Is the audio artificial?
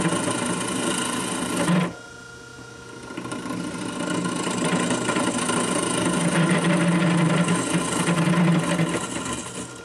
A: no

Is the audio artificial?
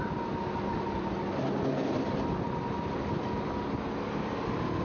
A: no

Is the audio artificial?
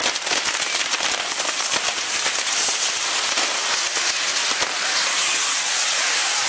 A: no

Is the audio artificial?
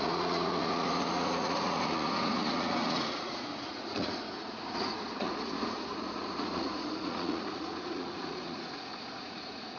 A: yes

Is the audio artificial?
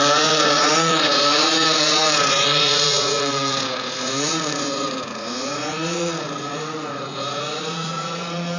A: yes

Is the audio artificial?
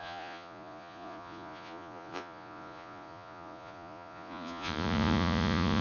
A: yes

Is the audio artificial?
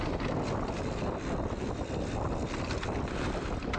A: no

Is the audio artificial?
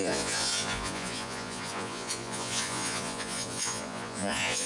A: yes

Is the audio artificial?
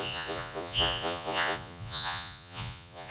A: yes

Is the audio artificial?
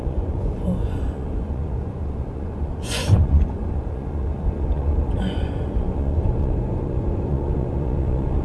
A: yes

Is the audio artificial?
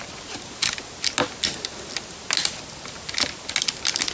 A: no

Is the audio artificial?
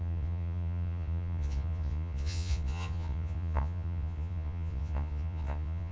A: yes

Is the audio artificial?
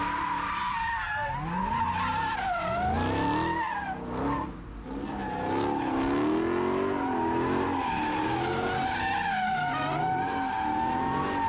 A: no